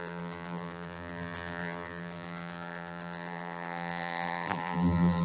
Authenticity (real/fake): fake